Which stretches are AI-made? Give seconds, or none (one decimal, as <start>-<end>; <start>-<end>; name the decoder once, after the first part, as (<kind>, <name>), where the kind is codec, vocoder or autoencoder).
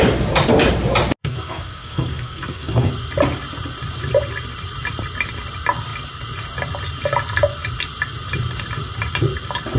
1.2-2.9 (codec, SNAC)